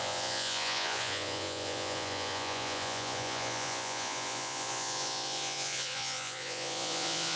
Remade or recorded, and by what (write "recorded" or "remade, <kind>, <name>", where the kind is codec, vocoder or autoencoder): remade, vocoder, Vocos